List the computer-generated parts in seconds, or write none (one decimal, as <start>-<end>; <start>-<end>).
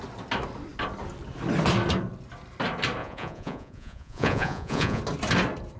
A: 3.0-5.0